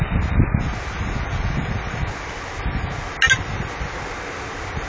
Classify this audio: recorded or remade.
recorded